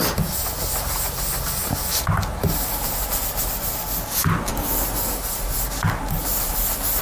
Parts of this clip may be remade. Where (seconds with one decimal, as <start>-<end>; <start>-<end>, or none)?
none